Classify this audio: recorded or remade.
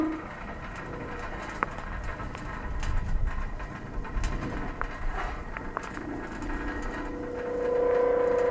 recorded